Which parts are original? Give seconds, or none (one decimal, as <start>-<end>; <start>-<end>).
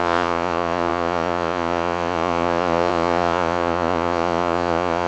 none